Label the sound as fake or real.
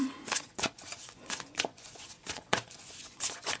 fake